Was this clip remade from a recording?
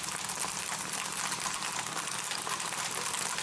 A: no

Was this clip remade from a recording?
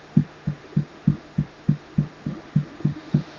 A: yes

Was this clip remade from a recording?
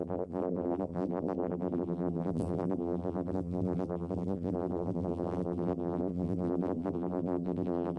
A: yes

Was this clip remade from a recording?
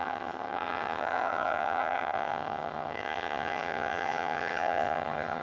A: yes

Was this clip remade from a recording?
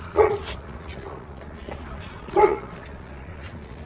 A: yes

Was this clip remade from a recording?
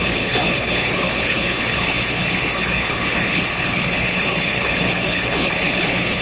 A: yes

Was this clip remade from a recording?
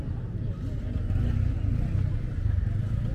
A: no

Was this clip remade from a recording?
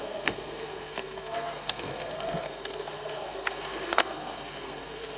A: yes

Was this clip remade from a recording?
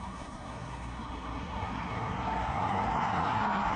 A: yes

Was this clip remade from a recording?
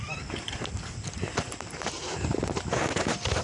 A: no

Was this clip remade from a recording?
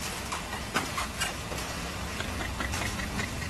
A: no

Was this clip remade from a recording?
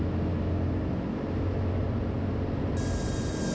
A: no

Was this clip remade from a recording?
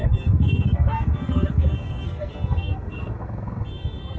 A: yes